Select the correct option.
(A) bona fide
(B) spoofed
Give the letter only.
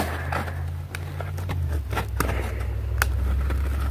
A